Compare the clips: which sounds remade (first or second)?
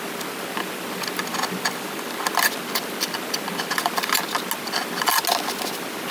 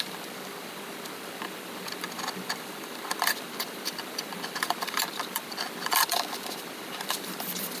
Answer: second